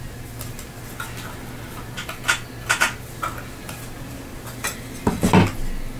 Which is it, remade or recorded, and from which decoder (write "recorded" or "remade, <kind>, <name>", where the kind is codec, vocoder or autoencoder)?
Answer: recorded